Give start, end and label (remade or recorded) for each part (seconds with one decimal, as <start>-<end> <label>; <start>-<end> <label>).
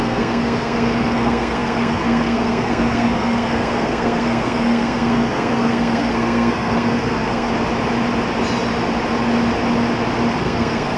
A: 0.0-7.5 remade; 7.5-10.4 recorded; 10.4-11.0 remade